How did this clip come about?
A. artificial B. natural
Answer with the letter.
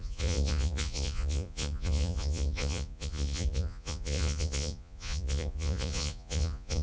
A